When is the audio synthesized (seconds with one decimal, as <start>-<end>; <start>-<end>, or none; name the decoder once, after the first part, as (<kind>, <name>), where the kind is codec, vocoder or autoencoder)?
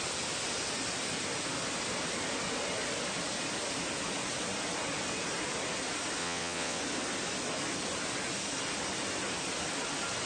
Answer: 6.2-6.8 (vocoder, WaveNeXt)